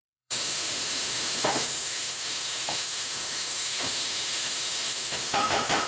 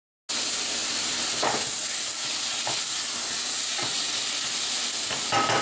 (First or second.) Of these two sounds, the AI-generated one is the first